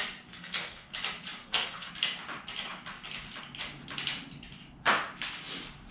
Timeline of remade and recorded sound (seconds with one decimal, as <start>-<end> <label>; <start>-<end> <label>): 0.0-0.4 recorded; 0.4-0.9 remade; 0.9-1.4 recorded; 1.4-1.9 remade; 1.9-5.9 recorded